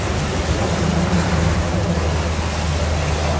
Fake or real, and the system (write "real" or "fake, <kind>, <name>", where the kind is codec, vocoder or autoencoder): real